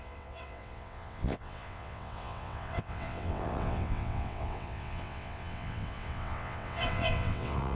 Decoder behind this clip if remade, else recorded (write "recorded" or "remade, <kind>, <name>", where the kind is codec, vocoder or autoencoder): remade, vocoder, WaveNeXt